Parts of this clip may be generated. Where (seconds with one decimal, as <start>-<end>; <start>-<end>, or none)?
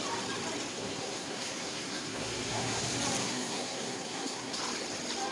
0.7-2.8; 3.2-4.6